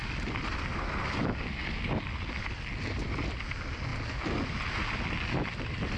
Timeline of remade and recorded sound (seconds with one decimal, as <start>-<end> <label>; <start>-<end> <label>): 0.0-6.0 recorded